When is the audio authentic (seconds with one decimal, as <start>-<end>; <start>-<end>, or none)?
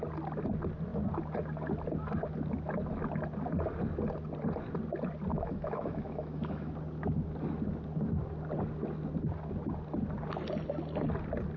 0.0-5.3; 6.7-11.6